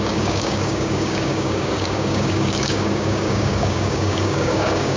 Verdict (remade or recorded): remade